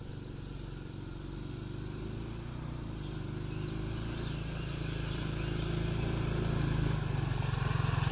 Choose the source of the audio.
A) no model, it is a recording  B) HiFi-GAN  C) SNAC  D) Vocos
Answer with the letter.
A